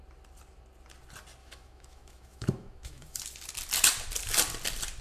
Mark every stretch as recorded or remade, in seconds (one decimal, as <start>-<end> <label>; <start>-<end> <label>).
0.0-1.4 recorded; 1.4-3.2 remade; 3.2-5.0 recorded